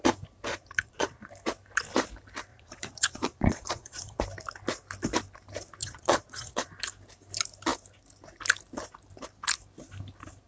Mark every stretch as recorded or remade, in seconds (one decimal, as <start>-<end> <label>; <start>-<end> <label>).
0.0-0.5 recorded; 0.5-1.3 remade; 1.3-2.5 recorded; 2.5-4.2 remade; 4.2-5.8 recorded; 5.8-6.7 remade; 6.7-10.5 recorded